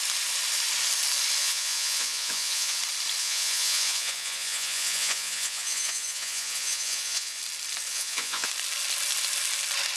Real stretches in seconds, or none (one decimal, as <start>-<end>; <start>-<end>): 0.0-1.4; 2.8-3.2; 7.4-7.9; 8.5-10.0